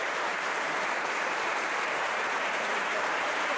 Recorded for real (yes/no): no